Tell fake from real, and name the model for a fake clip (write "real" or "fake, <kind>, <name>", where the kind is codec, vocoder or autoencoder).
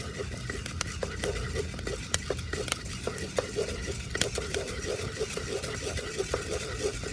real